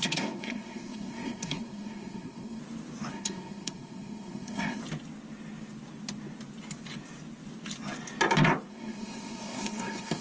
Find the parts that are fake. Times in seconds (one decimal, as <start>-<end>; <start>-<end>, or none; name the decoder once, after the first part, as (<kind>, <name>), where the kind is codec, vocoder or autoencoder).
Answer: 0.0-2.6 (codec, SNAC); 3.1-4.8; 8.7-10.2